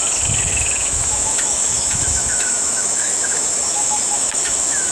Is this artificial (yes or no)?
yes